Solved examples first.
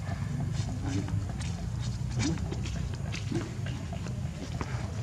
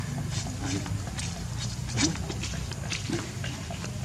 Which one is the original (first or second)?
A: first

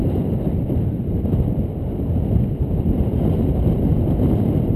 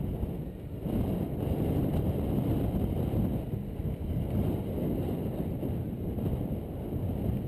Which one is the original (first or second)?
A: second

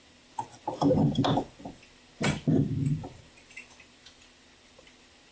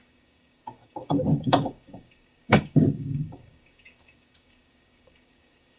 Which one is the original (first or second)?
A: first